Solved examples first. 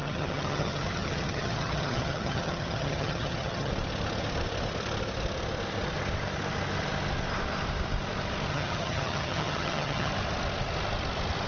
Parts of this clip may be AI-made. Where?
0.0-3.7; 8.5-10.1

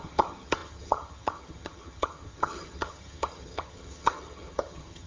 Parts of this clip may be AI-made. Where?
0.0-5.1

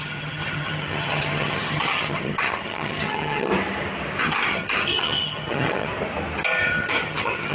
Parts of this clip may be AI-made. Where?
0.0-3.5; 4.2-5.9; 6.6-7.5

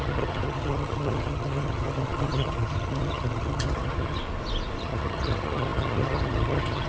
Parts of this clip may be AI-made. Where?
0.0-4.2; 4.8-6.9

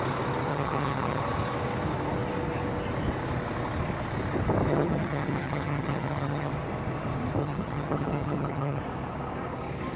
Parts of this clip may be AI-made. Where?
0.5-1.2; 4.7-6.5; 7.4-8.8

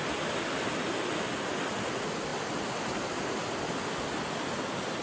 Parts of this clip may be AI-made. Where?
none